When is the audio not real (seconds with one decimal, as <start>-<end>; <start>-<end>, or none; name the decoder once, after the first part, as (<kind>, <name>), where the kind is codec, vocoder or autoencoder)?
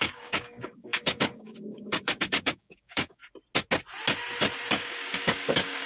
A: 0.0-3.2 (codec, DAC); 4.7-5.9